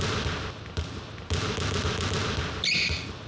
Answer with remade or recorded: recorded